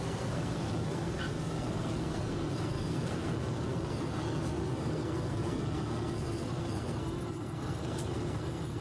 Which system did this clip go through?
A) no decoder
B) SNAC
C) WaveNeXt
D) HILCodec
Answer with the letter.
B